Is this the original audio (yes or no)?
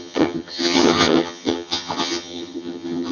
no